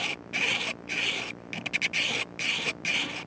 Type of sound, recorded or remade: recorded